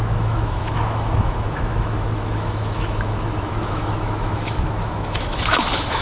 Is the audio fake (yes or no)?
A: yes